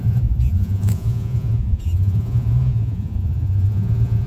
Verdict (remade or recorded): remade